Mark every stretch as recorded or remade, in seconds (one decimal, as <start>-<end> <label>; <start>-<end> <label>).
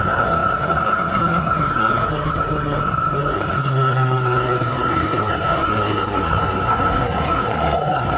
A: 0.0-8.2 remade